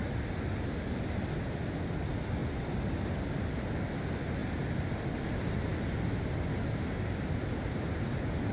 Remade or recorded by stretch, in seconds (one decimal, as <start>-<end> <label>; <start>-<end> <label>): 0.0-8.5 recorded